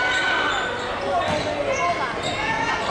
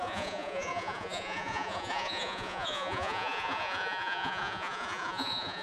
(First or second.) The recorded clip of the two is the first